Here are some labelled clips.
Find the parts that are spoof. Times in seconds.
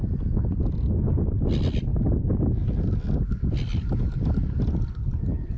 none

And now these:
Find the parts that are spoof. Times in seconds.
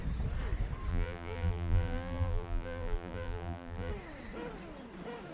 0.9-3.9 (vocoder, BigVGAN v2)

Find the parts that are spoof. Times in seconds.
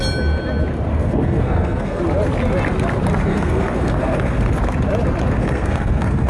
0.9-2.0 (codec, SNAC); 3.3-4.5; 5.4-6.3